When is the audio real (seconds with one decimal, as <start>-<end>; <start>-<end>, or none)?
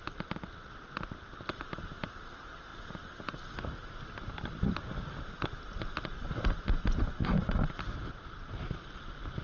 0.0-9.4